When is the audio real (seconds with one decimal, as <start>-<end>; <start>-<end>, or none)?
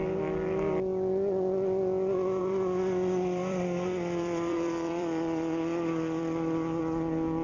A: 0.0-2.4; 6.8-7.4